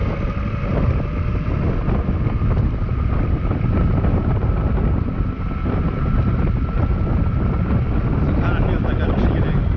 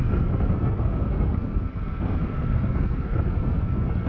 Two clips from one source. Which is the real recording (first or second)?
first